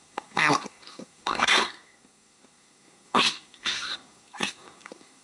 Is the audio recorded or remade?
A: remade